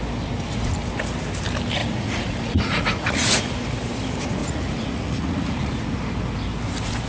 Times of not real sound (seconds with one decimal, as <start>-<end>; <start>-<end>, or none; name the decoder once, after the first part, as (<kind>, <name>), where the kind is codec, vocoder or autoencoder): 1.8-3.5 (vocoder, Vocos); 4.4-6.0